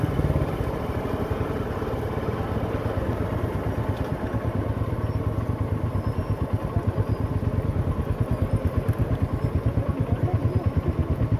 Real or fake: real